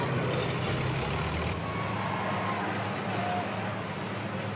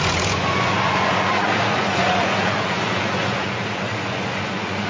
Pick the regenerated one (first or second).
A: second